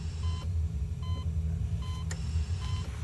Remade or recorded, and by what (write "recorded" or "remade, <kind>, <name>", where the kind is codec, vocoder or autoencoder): recorded